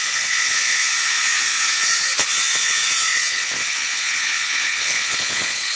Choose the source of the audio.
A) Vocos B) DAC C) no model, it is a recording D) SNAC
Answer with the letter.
A